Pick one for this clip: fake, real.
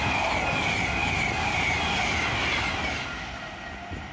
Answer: real